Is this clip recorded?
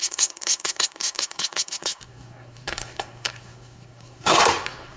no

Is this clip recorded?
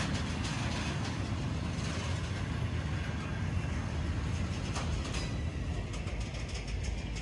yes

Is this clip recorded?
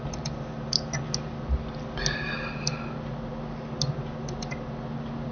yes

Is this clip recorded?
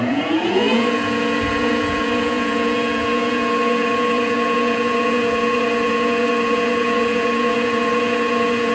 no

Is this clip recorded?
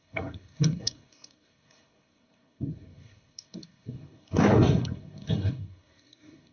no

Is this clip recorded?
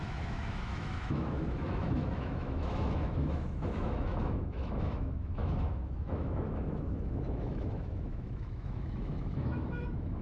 no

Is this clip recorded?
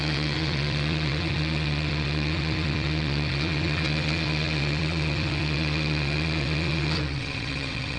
no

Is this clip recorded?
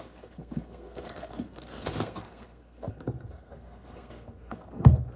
no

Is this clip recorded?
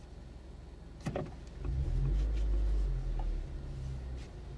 yes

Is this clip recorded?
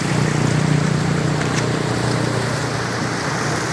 yes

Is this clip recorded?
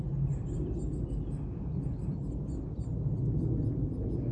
yes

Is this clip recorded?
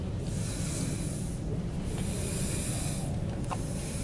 yes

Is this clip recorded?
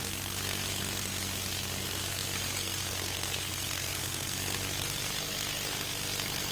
no